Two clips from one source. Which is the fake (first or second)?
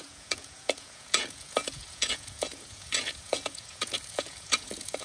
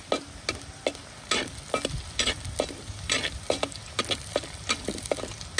first